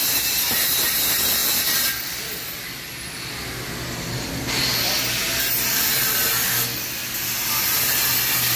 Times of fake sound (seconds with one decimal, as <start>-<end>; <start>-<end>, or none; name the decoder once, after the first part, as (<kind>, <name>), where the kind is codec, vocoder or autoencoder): none